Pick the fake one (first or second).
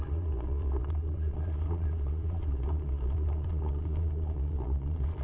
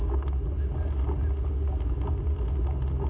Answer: first